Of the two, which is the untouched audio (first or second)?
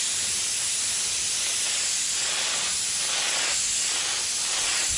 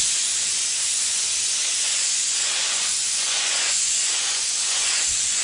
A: first